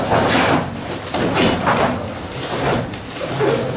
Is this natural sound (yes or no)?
yes